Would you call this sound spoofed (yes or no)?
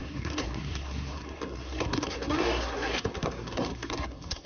yes